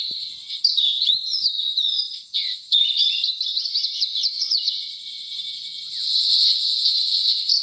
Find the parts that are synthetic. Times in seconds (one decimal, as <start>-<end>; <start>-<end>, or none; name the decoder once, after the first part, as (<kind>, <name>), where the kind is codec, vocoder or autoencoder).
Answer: none